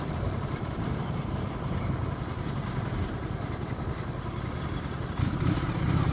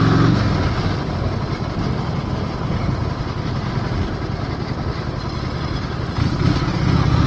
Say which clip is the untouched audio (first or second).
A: second